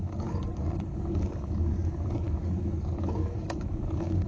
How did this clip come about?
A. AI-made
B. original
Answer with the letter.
A